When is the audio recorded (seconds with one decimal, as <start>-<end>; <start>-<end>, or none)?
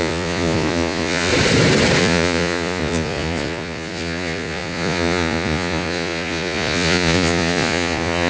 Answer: 1.3-2.0